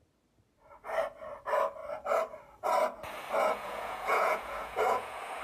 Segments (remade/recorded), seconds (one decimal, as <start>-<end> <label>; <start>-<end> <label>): 0.0-3.4 recorded; 3.4-5.4 remade